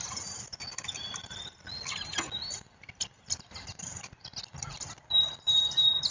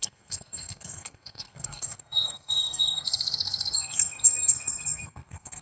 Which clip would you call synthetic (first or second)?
second